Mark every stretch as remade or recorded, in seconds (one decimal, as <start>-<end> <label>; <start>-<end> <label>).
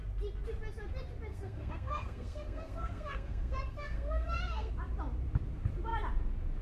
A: 0.0-1.3 recorded; 1.3-4.7 remade; 4.7-6.6 recorded